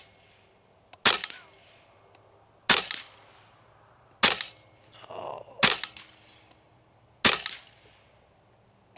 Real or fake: real